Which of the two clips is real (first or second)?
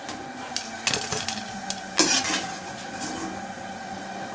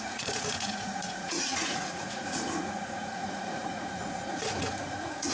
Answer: first